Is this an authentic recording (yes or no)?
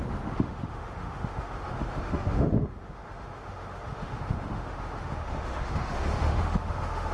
no